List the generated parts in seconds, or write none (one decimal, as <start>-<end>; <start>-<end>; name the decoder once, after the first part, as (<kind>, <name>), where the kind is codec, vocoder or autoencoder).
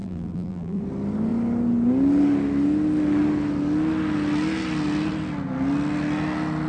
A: 0.0-0.8 (vocoder, BigVGAN v2)